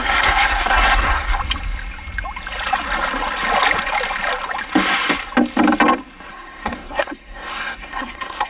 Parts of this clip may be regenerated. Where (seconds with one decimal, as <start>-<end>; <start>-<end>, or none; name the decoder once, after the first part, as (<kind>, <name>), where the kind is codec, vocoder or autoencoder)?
0.0-1.4 (codec, SNAC); 6.3-8.5